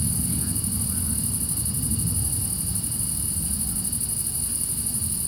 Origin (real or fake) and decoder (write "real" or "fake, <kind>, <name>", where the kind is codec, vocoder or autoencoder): real